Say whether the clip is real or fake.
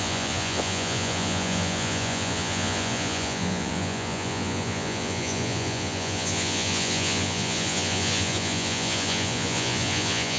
fake